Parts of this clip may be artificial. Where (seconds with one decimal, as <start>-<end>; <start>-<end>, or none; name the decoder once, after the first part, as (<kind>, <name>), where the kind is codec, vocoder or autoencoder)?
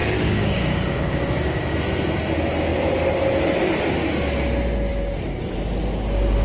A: 0.0-1.6 (codec, DAC)